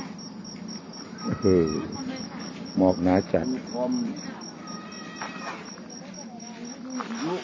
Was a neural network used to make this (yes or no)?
no